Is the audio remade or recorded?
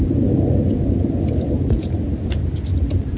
remade